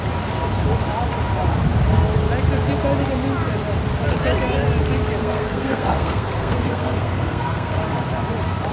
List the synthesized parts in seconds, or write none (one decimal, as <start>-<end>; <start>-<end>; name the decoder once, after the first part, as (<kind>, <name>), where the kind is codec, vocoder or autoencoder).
5.2-7.8 (codec, SNAC)